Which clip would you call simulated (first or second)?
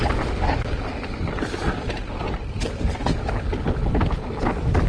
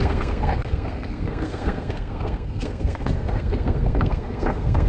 second